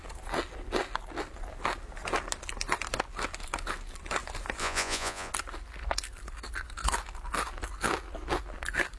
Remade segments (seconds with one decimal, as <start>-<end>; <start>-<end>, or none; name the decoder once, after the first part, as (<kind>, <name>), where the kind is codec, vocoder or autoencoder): 4.6-5.3 (vocoder, Vocos)